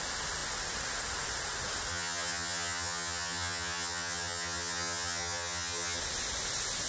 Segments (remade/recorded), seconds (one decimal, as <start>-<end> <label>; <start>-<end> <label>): 0.0-1.9 recorded; 1.9-6.0 remade; 6.0-6.9 recorded